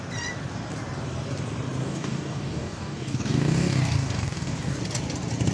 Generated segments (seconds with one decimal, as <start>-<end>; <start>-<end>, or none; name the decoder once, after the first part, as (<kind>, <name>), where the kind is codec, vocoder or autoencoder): 1.8-4.8 (codec, DAC)